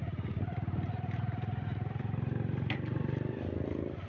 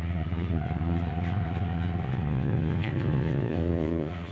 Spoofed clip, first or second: second